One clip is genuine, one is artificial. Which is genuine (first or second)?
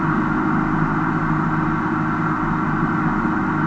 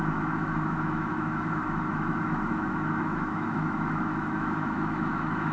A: first